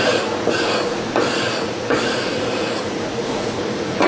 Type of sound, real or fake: fake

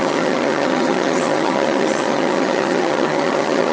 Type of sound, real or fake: fake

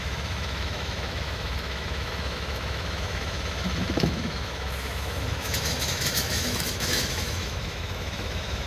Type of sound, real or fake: fake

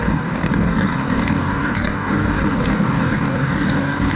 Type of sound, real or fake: fake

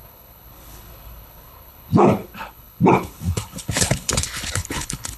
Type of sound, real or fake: fake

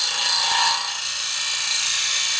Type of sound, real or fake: real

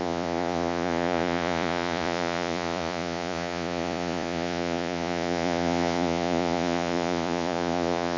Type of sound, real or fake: fake